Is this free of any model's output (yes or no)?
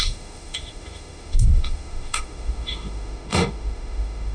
no